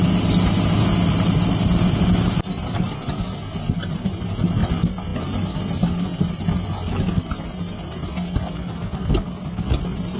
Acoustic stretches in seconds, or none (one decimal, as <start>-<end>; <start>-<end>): 0.0-10.2